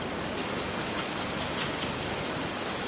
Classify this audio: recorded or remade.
recorded